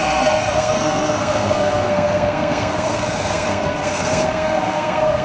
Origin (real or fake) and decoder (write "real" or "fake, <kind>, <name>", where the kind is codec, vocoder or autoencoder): fake, codec, SNAC